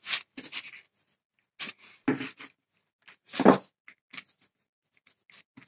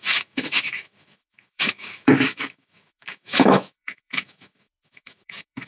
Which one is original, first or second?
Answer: first